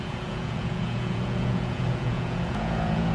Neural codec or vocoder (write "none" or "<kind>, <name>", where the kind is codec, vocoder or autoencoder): vocoder, Vocos